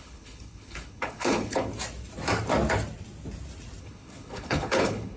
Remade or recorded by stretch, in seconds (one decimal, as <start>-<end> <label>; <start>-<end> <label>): 0.0-1.7 remade; 1.7-3.8 recorded; 3.8-5.2 remade

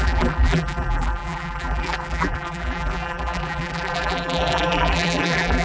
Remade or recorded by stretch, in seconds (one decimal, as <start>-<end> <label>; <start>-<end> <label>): 0.0-5.6 remade

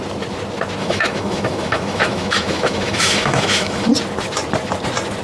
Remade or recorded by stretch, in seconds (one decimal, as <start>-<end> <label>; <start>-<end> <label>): 0.0-0.8 recorded; 0.8-3.9 remade; 3.9-5.2 recorded

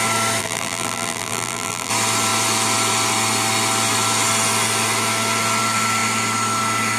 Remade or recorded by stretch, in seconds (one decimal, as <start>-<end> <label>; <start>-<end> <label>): 0.0-0.4 recorded; 0.4-1.9 remade; 1.9-7.0 recorded